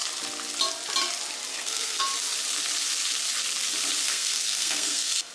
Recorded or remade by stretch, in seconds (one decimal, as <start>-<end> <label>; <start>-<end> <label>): 0.0-1.5 recorded; 1.5-2.0 remade; 2.0-4.0 recorded; 4.0-5.3 remade